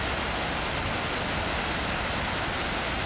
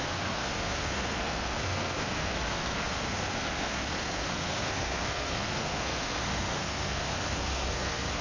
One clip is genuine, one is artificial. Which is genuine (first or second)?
first